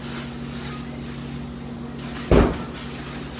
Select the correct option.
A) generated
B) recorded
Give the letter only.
B